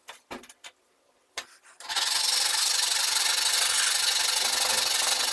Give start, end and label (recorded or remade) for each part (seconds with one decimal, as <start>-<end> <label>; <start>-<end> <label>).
0.0-5.3 recorded